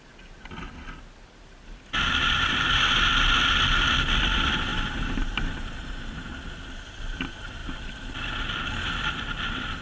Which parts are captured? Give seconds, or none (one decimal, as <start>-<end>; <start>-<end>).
0.0-4.7; 6.4-7.6; 8.1-9.8

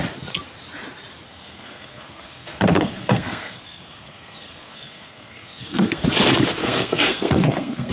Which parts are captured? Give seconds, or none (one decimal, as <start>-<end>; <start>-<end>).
0.0-1.3; 6.0-6.6

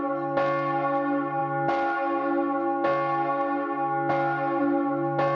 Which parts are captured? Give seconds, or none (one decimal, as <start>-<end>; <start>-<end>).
0.0-5.3

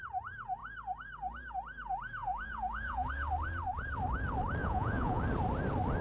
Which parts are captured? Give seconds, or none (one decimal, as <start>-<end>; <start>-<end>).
0.0-2.2; 3.1-4.6; 5.2-6.0

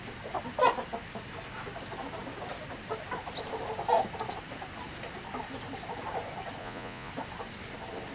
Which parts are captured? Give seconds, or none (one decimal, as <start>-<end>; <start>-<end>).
0.0-6.6; 7.1-8.1

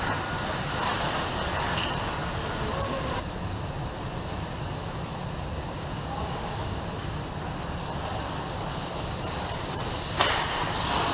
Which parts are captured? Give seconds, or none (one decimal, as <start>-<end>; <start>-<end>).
0.0-5.9; 6.8-11.1

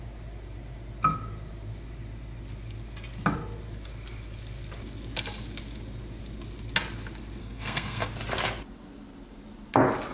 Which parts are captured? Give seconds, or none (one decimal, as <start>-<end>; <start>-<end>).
0.0-7.4; 8.1-10.1